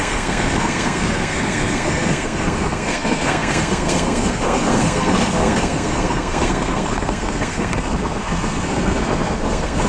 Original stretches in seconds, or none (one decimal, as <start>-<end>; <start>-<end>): none